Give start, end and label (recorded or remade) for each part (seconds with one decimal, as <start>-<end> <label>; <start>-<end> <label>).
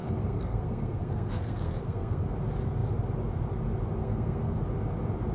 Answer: 0.0-2.3 remade; 2.3-4.0 recorded; 4.0-4.6 remade; 4.6-5.3 recorded